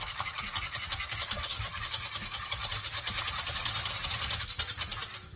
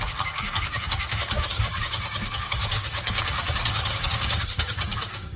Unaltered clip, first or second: first